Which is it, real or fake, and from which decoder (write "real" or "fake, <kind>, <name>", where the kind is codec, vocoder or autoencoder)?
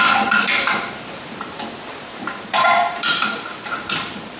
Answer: fake, vocoder, BigVGAN v2